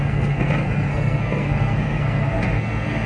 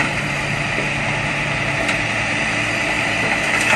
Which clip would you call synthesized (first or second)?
first